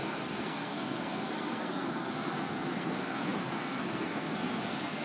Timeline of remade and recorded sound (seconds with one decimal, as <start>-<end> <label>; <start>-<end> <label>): 0.0-5.0 remade